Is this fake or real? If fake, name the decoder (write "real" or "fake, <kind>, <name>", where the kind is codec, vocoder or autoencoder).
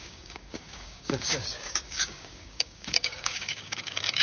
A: fake, codec, DAC